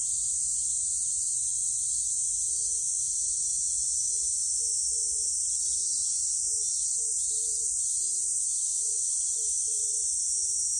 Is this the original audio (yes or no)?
yes